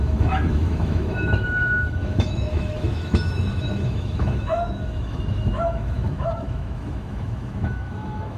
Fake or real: fake